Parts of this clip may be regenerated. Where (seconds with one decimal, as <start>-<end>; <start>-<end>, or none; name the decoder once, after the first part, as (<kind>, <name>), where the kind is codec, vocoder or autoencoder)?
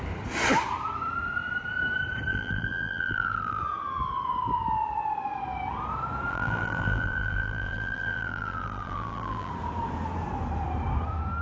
2.3-3.6 (vocoder, BigVGAN v2); 6.3-9.5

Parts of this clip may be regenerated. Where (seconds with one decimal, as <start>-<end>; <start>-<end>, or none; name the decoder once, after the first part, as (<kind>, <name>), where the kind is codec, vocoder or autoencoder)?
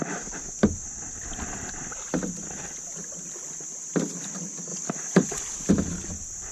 none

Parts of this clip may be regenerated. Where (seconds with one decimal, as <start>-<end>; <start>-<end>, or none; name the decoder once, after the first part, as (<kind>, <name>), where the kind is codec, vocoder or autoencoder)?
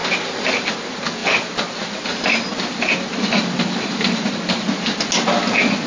none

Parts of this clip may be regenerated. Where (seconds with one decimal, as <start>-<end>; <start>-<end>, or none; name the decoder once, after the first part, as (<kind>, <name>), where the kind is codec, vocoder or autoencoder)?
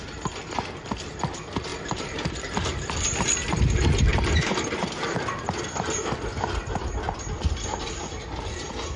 1.7-2.9 (vocoder, BigVGAN v2); 4.1-4.7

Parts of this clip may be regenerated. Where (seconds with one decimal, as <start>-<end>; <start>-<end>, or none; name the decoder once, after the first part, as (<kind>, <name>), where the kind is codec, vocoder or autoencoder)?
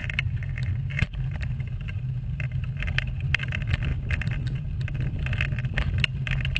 0.0-2.8 (vocoder, BigVGAN v2); 3.9-4.7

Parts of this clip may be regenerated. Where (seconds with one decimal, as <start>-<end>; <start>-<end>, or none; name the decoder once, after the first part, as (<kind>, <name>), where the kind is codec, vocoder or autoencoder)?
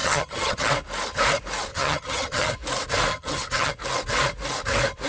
0.0-0.7 (vocoder, HiFi-GAN); 1.7-2.5; 3.1-3.7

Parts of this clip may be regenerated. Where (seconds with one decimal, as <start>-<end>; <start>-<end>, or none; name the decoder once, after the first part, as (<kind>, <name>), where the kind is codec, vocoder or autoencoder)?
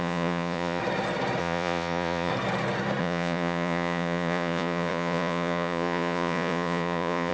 0.0-0.8 (vocoder, Vocos); 1.4-2.3; 3.0-7.3